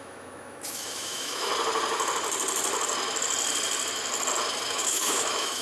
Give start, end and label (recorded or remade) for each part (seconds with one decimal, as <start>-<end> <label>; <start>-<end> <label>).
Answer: 0.0-1.5 remade; 1.5-4.7 recorded; 4.7-5.6 remade